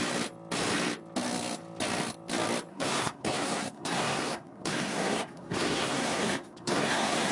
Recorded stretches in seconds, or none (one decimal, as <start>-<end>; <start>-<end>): 0.0-2.7